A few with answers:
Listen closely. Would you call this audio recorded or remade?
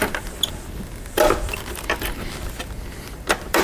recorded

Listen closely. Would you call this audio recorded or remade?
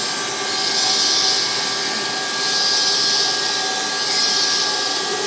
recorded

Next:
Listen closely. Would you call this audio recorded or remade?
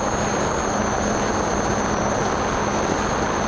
recorded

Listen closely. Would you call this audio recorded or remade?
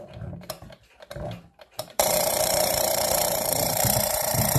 remade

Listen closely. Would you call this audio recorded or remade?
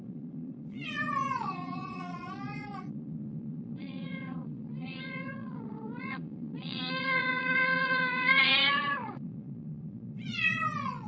remade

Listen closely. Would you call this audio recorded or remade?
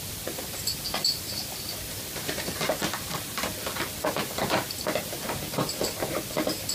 remade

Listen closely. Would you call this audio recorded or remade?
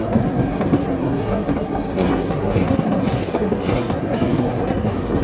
remade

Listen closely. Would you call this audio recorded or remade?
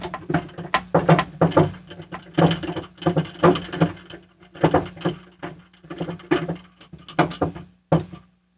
recorded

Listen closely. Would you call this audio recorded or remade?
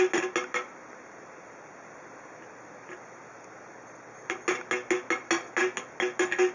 recorded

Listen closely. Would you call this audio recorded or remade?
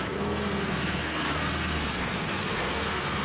remade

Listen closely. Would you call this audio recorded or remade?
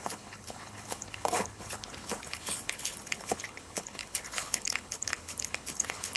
remade